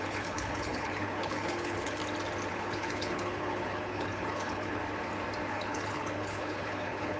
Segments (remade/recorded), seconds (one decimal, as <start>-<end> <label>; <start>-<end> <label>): 0.0-2.0 remade; 2.0-2.5 recorded; 2.5-4.8 remade; 4.8-5.5 recorded; 5.5-7.2 remade